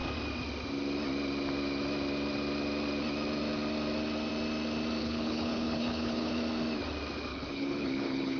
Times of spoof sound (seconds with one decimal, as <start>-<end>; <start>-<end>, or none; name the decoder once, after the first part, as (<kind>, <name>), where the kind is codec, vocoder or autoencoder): 5.0-6.3 (codec, HILCodec); 7.3-8.4